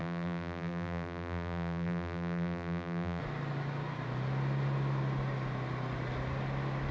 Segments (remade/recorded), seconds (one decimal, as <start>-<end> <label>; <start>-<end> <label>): 0.0-3.2 remade; 3.2-6.9 recorded